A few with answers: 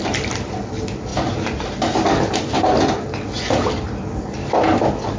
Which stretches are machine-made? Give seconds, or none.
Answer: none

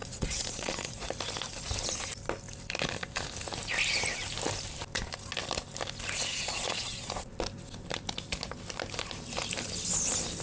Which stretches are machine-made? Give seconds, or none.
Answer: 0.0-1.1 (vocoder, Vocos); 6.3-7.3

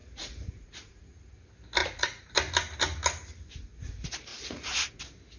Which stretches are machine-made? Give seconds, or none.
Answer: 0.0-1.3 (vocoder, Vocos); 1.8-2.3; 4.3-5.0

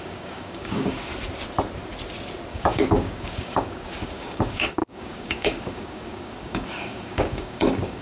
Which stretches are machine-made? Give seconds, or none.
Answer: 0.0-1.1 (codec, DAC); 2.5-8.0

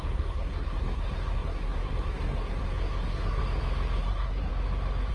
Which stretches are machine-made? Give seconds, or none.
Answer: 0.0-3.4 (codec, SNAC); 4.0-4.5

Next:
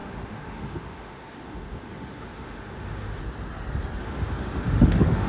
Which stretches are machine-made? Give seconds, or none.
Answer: 0.0-3.2 (autoencoder, DAC-VAE); 4.0-5.3